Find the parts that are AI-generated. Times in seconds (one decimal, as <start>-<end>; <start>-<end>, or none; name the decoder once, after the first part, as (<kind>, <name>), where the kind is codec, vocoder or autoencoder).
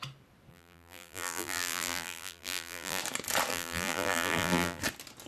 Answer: 0.5-3.0 (vocoder, BigVGAN v2); 3.5-4.8